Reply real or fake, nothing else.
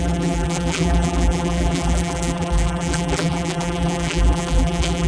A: fake